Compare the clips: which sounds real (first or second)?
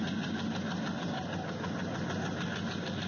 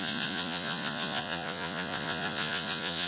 first